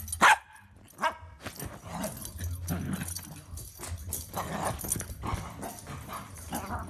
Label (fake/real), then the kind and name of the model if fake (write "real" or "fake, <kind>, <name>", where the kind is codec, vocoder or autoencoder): real